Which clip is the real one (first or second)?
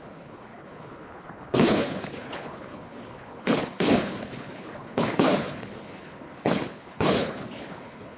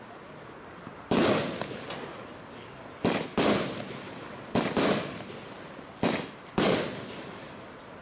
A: second